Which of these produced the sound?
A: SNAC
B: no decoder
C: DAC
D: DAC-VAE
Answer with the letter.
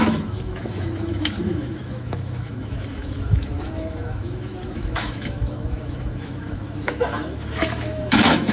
D